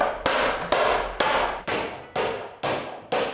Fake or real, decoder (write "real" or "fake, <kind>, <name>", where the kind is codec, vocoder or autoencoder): real